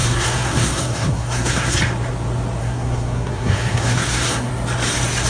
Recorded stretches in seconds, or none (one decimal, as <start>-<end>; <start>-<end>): 1.8-2.6; 4.5-5.3